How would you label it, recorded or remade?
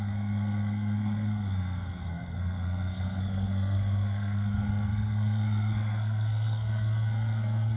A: remade